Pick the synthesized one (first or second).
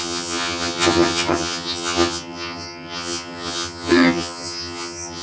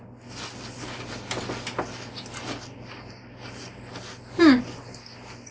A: first